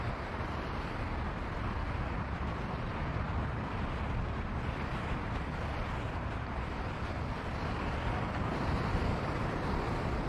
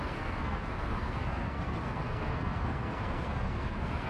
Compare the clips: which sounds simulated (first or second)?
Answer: second